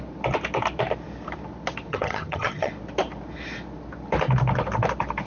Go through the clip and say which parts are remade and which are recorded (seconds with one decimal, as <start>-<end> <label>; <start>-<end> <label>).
0.0-1.9 recorded; 1.9-2.7 remade; 2.7-5.3 recorded